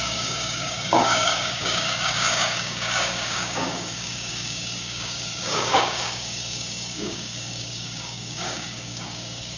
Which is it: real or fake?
fake